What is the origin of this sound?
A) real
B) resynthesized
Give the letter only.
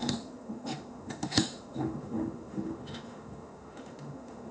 B